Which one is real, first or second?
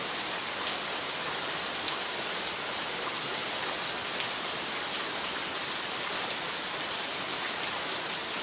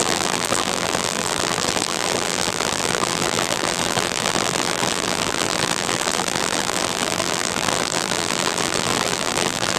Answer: first